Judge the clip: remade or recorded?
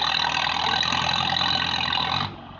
recorded